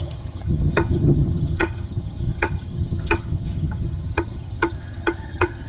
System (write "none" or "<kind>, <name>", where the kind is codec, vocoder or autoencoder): vocoder, HiFi-GAN